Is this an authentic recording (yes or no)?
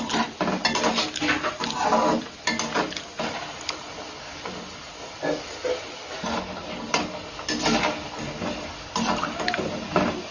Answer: yes